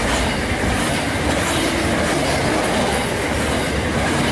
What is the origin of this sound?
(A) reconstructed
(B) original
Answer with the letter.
B